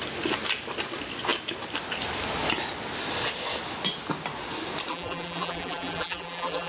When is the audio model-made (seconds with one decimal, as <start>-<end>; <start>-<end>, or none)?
4.9-6.7